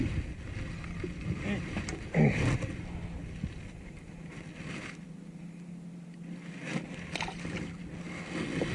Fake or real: real